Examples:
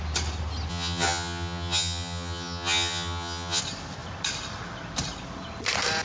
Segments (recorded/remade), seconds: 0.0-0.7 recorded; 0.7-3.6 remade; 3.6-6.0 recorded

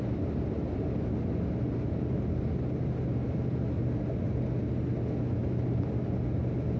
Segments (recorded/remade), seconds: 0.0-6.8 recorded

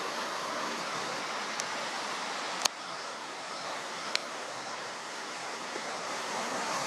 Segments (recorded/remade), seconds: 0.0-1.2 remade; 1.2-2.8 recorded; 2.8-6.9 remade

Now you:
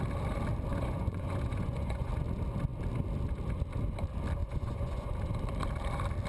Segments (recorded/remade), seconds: 0.0-0.7 recorded; 0.7-2.1 remade; 2.1-4.4 recorded; 4.4-5.1 remade; 5.1-6.3 recorded

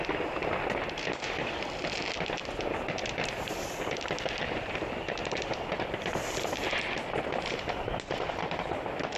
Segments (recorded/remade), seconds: 0.0-5.2 recorded; 5.2-6.7 remade; 6.7-9.2 recorded

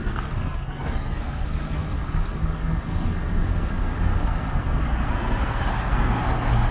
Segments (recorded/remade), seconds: 0.0-6.7 remade